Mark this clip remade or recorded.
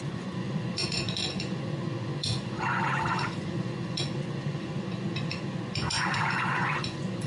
remade